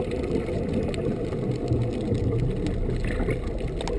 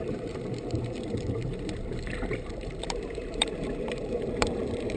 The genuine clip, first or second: first